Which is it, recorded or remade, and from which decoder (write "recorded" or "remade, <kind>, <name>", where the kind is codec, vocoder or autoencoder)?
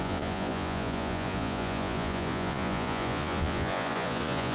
remade, vocoder, Vocos